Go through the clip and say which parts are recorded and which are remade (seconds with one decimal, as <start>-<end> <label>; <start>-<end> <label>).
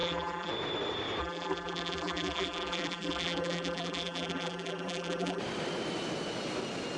0.0-0.5 remade; 0.5-1.2 recorded; 1.2-5.4 remade; 5.4-7.0 recorded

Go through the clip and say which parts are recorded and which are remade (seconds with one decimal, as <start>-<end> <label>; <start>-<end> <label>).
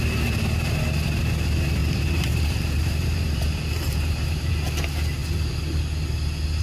0.0-1.8 recorded; 1.8-4.5 remade; 4.5-6.6 recorded